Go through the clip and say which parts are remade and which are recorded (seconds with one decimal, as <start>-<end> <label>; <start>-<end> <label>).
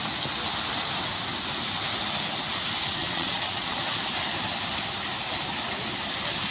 0.0-3.0 recorded; 3.0-3.8 remade; 3.8-6.5 recorded